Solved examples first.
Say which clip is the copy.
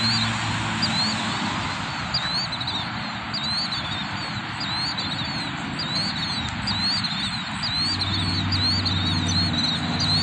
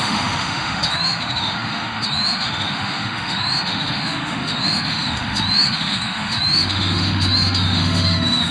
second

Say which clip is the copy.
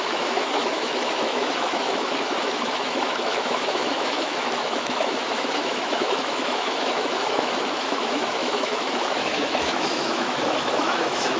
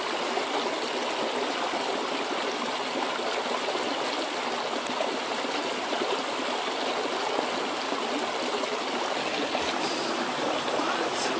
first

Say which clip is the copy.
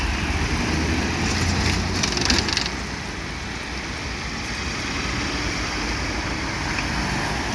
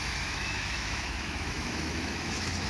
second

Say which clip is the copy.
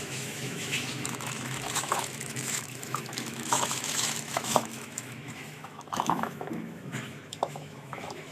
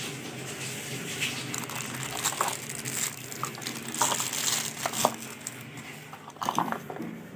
first